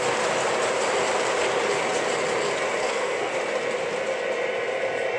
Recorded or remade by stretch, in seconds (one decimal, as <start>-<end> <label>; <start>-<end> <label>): 0.0-2.8 recorded; 2.8-3.3 remade; 3.3-5.2 recorded